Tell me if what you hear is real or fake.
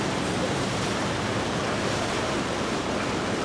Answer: fake